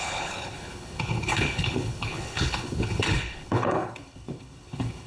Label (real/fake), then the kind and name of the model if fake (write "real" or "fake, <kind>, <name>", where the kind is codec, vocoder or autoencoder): fake, codec, HILCodec